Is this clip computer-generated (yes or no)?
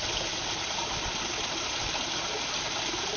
no